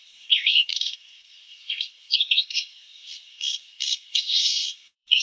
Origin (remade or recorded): remade